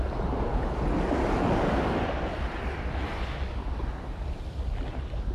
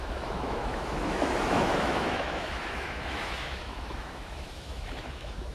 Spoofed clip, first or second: second